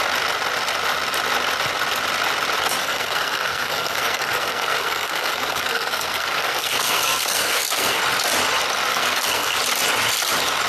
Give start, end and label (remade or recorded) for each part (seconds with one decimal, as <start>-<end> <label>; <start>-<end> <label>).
0.0-2.8 recorded; 2.8-8.0 remade; 8.0-8.9 recorded; 8.9-9.6 remade; 9.6-10.7 recorded